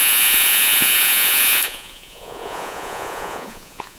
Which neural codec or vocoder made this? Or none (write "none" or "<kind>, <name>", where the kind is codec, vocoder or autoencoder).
vocoder, Vocos